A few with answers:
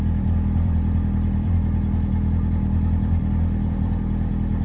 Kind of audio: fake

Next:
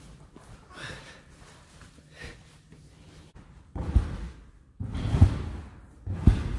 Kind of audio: real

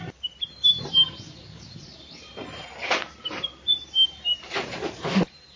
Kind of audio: fake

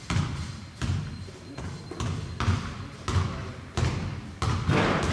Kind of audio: real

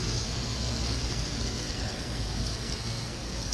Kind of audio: fake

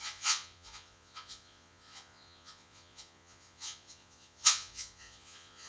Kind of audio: fake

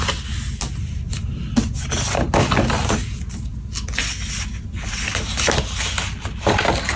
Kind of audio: real